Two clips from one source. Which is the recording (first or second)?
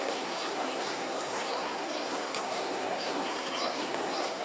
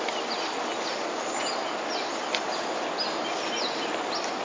second